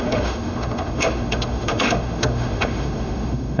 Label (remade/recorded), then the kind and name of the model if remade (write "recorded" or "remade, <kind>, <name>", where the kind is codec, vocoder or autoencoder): remade, autoencoder, DAC-VAE